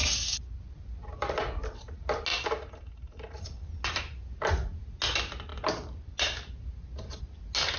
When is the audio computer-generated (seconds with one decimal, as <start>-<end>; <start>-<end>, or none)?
none